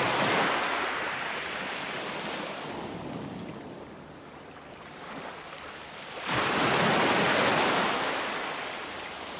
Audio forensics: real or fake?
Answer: real